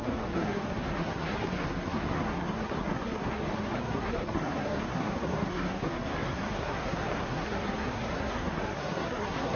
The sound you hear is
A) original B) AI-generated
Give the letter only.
B